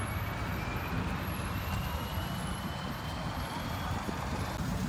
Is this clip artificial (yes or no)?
no